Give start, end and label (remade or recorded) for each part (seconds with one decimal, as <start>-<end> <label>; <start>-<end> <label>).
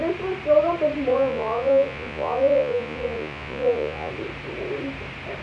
0.0-1.1 recorded; 1.1-4.1 remade; 4.1-5.4 recorded